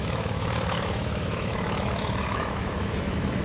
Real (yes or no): no